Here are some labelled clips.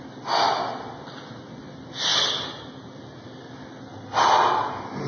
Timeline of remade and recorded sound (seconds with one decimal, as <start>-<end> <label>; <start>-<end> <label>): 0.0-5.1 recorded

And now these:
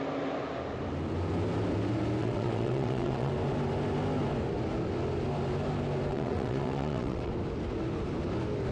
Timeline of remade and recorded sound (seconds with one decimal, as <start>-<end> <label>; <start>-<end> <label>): 0.0-2.2 recorded; 2.2-3.3 remade; 3.3-6.1 recorded; 6.1-7.3 remade; 7.3-8.7 recorded

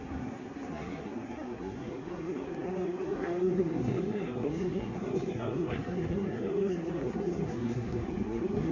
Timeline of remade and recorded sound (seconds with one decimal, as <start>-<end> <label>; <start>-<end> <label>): 0.0-8.7 remade

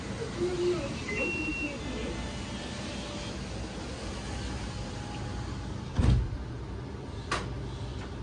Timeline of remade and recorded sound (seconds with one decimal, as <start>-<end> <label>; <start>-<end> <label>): 0.0-8.2 recorded

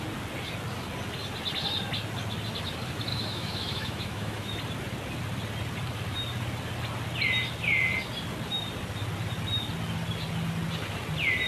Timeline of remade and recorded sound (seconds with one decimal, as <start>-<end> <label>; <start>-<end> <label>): 0.0-3.1 recorded; 3.1-4.5 remade; 4.5-11.5 recorded

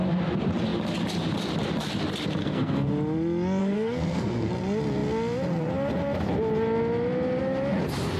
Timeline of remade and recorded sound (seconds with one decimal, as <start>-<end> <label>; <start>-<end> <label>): 0.0-2.4 recorded; 2.4-2.9 remade; 2.9-3.6 recorded; 3.6-4.5 remade; 4.5-8.2 recorded